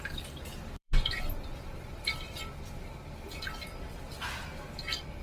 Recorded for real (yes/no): no